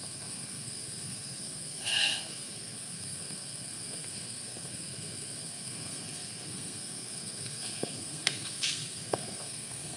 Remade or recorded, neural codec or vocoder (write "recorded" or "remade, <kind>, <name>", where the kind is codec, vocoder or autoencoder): remade, codec, SNAC